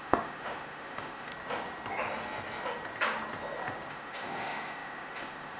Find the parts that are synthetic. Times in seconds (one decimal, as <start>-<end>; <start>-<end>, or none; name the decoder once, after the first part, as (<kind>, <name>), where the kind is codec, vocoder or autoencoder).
0.0-1.3 (autoencoder, DAC-VAE); 3.9-5.6